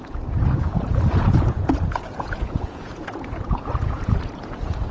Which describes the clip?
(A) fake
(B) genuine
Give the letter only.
A